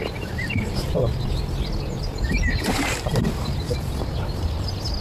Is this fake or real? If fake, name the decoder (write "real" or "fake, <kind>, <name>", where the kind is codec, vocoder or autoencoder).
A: real